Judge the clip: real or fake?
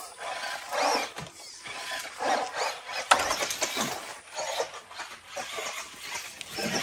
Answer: real